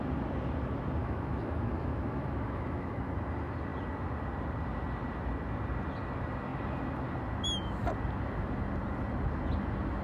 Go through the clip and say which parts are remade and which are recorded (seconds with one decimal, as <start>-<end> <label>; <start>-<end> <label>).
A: 0.0-1.0 recorded; 1.0-3.1 remade; 3.1-10.0 recorded